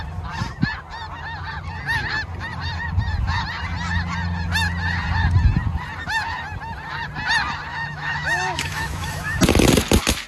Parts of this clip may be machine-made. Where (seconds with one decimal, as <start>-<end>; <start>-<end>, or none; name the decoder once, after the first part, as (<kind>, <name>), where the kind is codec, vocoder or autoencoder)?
7.7-9.4 (autoencoder, DAC-VAE)